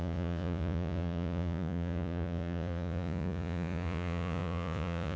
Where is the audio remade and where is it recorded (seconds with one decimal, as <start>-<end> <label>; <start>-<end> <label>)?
0.0-5.2 remade